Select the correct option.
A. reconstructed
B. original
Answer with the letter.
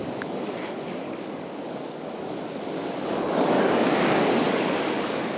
A